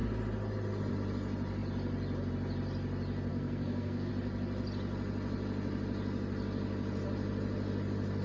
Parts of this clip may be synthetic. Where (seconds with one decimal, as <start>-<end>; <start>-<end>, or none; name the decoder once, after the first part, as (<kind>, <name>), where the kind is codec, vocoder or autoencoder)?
3.3-4.1 (codec, SNAC)